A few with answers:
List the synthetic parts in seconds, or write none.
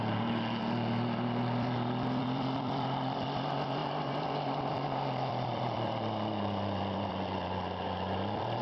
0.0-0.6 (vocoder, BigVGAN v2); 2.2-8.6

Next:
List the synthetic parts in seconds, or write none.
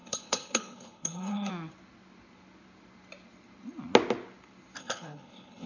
0.0-1.5 (codec, HILCodec); 4.8-5.7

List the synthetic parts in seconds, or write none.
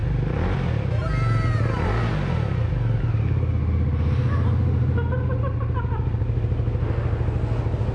none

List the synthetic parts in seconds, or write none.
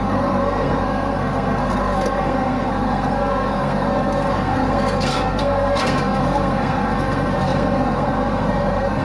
0.0-9.0 (codec, SNAC)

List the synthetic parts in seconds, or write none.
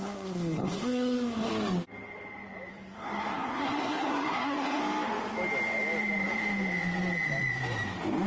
0.0-1.5 (codec, SNAC); 2.7-4.8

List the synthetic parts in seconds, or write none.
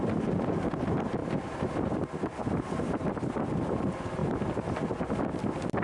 none